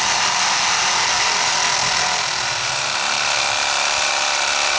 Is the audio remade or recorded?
recorded